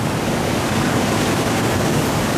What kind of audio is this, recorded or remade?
remade